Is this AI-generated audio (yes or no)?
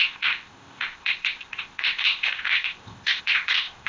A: yes